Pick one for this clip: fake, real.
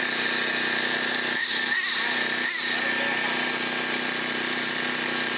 real